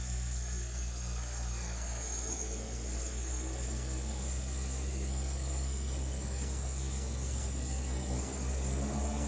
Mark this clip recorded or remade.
remade